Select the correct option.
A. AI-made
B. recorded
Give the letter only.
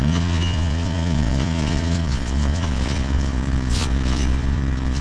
A